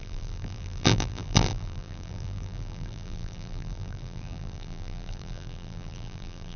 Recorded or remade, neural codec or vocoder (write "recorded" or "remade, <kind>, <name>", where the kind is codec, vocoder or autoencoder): remade, vocoder, BigVGAN v2